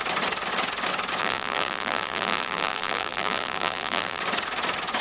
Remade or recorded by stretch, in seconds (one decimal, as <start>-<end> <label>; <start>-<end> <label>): 0.0-1.2 recorded; 1.2-4.2 remade; 4.2-5.0 recorded